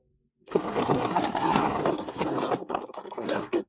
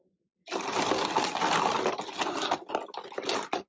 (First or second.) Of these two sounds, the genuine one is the second